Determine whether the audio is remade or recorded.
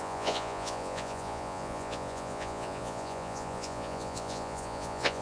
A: remade